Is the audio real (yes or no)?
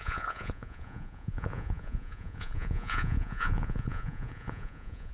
no